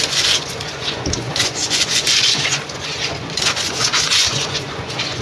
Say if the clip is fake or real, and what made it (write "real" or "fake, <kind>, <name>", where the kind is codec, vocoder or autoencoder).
fake, vocoder, Vocos